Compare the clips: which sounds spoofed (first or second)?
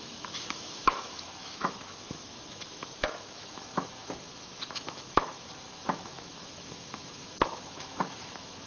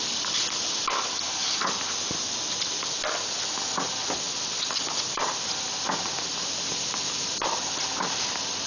first